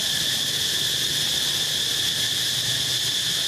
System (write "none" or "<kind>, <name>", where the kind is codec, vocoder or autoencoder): none